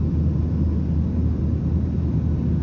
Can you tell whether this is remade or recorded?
recorded